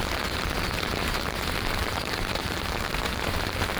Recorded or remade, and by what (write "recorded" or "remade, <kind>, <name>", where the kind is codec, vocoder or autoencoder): remade, vocoder, BigVGAN v2